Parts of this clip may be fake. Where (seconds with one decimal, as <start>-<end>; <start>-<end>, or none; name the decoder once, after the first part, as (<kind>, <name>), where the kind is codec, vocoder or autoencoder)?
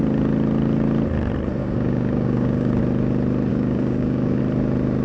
1.6-2.8 (codec, DAC); 3.5-4.4